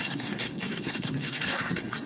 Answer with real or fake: fake